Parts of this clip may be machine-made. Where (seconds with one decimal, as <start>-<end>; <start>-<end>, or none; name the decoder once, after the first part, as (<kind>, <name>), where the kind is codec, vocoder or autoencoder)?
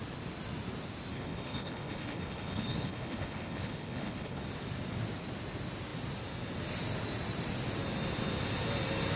1.1-4.4 (codec, HILCodec)